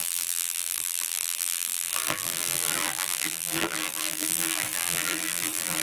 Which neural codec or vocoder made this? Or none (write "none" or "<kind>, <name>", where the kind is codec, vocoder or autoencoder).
vocoder, BigVGAN v2